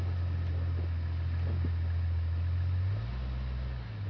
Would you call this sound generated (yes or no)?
no